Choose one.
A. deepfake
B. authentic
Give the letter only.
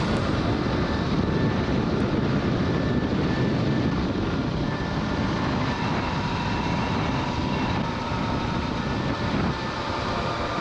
A